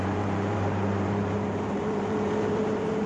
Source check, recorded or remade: remade